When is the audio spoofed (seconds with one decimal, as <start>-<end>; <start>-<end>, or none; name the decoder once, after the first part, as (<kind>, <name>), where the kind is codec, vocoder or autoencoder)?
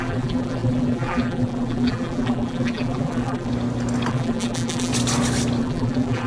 0.0-3.5 (vocoder, BigVGAN v2); 4.1-4.9; 5.6-6.3